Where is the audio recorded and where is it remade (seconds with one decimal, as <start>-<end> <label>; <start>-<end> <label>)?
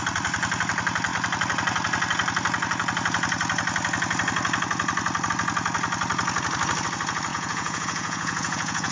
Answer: 0.0-7.3 recorded; 7.3-8.9 remade